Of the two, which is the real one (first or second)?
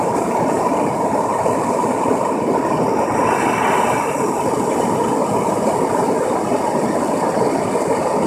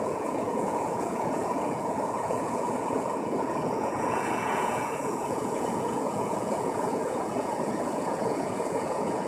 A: first